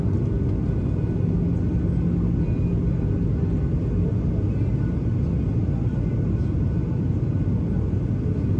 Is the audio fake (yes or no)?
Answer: no